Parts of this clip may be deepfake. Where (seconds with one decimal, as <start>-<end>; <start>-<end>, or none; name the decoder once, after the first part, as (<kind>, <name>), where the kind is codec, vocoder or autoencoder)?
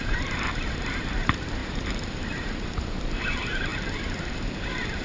0.0-3.7 (vocoder, BigVGAN v2); 4.3-5.0